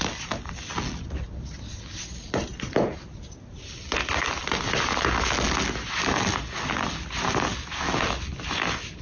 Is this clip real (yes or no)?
yes